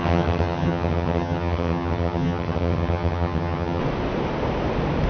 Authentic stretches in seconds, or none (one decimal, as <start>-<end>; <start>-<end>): 3.8-5.1

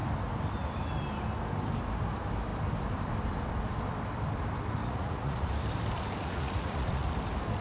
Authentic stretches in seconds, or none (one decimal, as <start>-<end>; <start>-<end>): 0.0-4.8; 5.5-6.2; 7.0-7.6

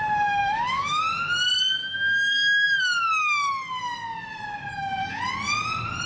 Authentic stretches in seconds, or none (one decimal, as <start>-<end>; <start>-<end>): 0.0-0.4; 1.0-1.8; 2.8-4.7; 5.2-6.1

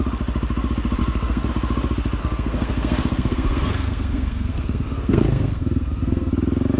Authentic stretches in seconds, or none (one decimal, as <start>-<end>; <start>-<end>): 0.0-1.0; 1.5-2.2; 6.3-6.8

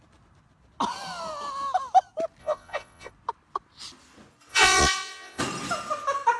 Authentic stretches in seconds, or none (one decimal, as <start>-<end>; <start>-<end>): 0.0-2.4; 3.1-4.5; 5.4-6.4

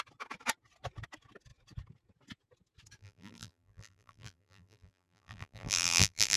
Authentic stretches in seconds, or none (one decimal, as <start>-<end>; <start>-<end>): 0.0-3.0

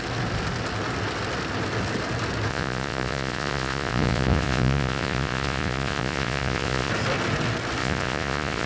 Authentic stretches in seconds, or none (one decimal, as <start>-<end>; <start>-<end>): 0.0-2.5; 6.9-7.8

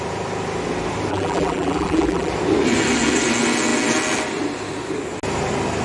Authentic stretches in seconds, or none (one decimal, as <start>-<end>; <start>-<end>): 0.0-1.1; 2.3-5.8